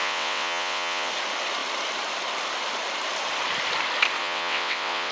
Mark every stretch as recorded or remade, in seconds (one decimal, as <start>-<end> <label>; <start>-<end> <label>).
0.0-1.1 remade; 1.1-4.2 recorded; 4.2-5.1 remade